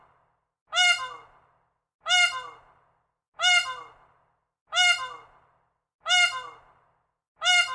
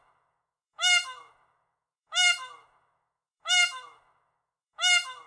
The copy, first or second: second